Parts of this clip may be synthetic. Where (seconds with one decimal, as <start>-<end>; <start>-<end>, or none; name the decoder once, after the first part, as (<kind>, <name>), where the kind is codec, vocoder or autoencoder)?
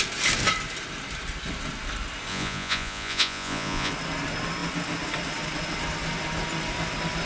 2.3-3.9 (vocoder, Vocos)